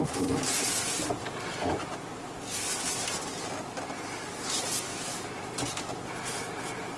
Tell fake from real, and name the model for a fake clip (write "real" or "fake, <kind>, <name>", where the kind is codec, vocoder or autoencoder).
real